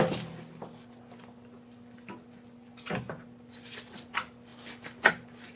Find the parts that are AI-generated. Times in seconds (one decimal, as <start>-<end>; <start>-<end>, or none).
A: none